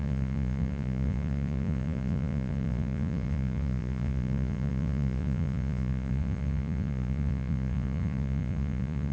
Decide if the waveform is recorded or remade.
remade